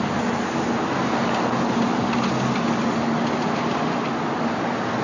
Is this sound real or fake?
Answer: real